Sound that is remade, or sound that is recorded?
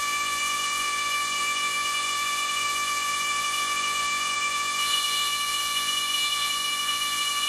remade